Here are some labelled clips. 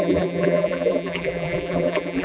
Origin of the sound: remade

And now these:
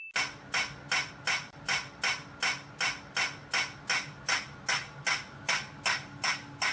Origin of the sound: recorded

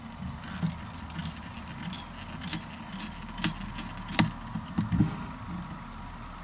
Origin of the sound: recorded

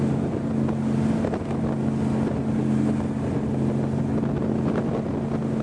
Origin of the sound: recorded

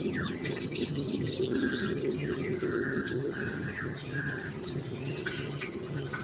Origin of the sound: remade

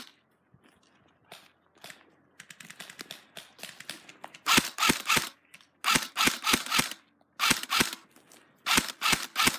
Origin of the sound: recorded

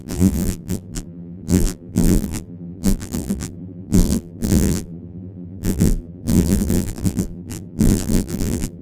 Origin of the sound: remade